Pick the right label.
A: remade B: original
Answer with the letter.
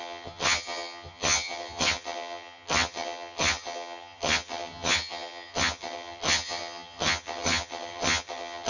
A